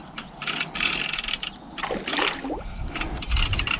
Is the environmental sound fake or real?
real